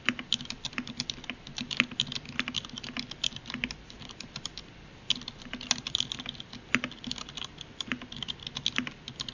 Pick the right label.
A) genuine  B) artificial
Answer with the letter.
A